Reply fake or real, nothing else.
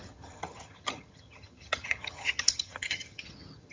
fake